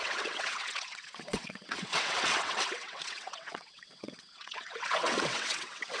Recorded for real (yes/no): no